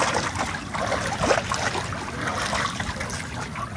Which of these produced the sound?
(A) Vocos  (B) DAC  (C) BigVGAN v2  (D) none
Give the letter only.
D